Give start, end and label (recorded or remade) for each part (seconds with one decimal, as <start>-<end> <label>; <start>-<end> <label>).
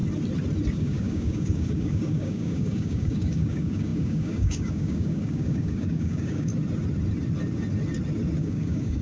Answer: 0.0-0.7 recorded; 0.7-6.5 remade; 6.5-8.4 recorded; 8.4-9.0 remade